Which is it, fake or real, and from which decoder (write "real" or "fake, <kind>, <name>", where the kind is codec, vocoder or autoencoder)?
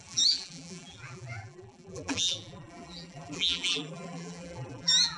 fake, vocoder, BigVGAN v2